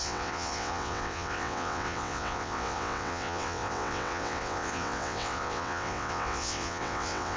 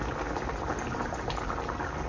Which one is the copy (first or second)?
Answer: first